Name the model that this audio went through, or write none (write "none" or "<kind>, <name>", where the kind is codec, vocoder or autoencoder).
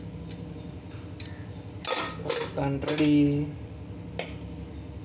none